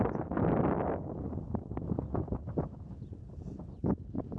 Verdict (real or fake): real